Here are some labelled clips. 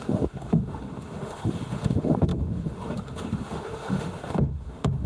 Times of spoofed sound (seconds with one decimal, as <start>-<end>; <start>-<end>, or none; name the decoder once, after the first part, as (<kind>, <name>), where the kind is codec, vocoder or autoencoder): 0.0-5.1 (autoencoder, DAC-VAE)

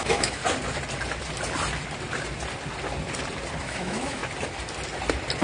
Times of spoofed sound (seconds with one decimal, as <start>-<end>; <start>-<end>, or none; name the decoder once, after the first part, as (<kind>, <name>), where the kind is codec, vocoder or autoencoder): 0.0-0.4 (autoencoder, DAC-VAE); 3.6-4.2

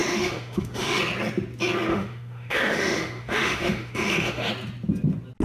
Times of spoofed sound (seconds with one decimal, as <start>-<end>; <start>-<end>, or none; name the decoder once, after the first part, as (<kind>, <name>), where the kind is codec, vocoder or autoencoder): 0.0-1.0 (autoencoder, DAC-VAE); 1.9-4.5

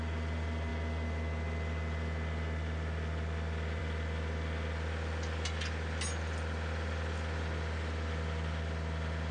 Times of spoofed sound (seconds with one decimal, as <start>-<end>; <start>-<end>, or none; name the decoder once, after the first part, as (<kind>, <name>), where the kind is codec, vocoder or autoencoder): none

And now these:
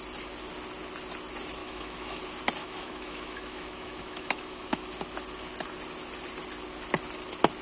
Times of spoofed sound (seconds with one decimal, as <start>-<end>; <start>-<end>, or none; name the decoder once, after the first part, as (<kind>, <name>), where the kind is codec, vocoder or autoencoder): 1.6-2.2 (autoencoder, DAC-VAE); 2.6-4.8

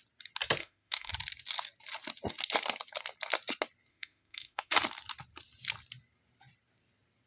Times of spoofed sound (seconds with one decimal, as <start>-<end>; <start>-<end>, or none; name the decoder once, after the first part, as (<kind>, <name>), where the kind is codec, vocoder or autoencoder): 0.6-1.1 (autoencoder, DAC-VAE); 3.9-4.7